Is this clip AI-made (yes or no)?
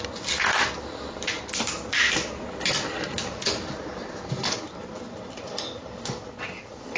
no